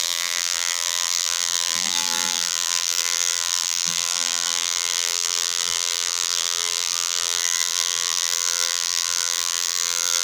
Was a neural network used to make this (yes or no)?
yes